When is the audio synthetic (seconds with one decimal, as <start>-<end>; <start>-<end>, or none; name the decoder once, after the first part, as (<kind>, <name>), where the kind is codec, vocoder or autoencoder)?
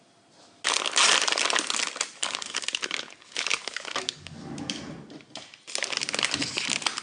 2.2-4.8 (codec, DAC)